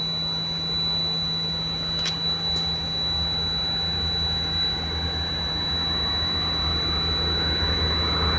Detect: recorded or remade recorded